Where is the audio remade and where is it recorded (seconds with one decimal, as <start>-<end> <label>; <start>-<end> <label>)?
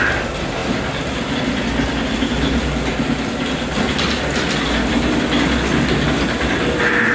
0.0-7.1 recorded